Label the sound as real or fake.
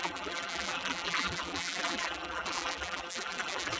fake